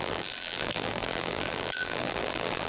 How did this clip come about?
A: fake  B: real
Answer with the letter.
A